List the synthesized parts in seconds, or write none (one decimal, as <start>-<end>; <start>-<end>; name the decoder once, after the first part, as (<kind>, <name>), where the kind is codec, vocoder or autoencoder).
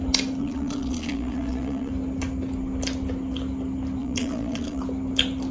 0.4-1.9 (vocoder, Vocos); 4.0-4.8